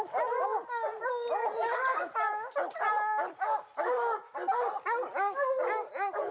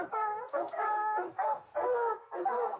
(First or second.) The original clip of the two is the first